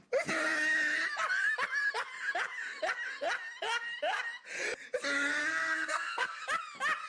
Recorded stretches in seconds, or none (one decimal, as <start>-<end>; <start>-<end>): 0.0-5.4; 6.4-7.1